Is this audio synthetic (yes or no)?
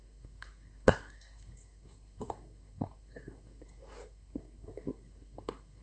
yes